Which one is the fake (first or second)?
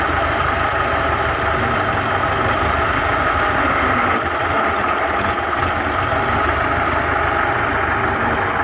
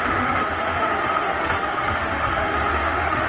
second